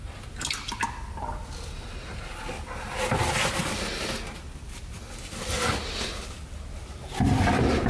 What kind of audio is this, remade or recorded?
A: recorded